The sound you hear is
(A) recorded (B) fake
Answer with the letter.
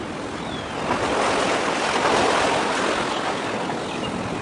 A